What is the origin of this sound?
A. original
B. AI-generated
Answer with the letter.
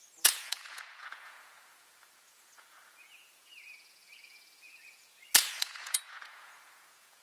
B